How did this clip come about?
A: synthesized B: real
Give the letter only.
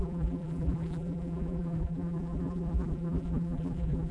A